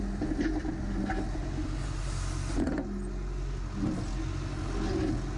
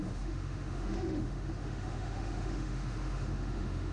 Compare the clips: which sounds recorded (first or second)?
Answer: first